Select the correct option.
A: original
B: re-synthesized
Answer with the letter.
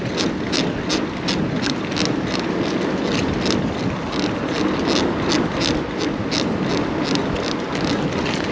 A